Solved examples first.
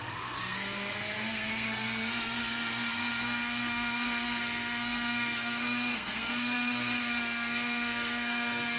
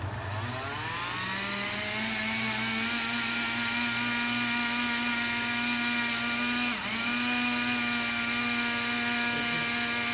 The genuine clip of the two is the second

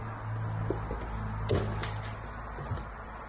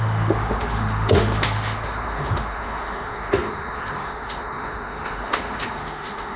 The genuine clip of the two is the first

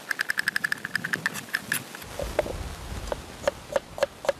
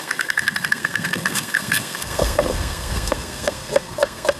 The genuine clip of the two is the first